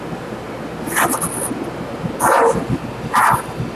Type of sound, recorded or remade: recorded